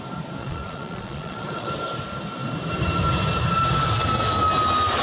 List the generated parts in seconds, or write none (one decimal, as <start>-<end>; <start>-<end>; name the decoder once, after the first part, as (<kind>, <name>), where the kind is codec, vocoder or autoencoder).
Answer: 0.4-1.7 (vocoder, Vocos)